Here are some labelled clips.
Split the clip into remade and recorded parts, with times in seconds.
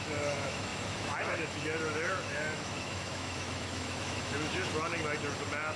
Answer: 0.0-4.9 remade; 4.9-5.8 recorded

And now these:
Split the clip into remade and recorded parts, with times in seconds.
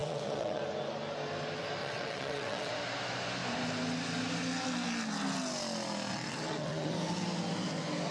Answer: 0.0-0.6 remade; 0.6-1.8 recorded; 1.8-2.7 remade; 2.7-6.1 recorded; 6.1-6.9 remade; 6.9-8.1 recorded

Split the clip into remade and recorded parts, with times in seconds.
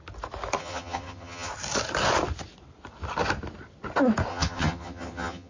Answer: 0.0-0.6 recorded; 0.6-1.5 remade; 1.5-4.3 recorded; 4.3-5.5 remade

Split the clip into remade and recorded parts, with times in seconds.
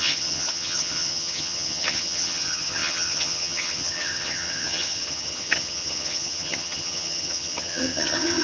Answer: 0.0-8.4 remade